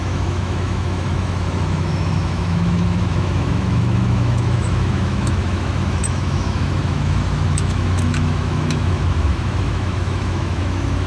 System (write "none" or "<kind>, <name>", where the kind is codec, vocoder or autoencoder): autoencoder, DAC-VAE